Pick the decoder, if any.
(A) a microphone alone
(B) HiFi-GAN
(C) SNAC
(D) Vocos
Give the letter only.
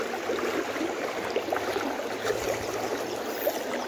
A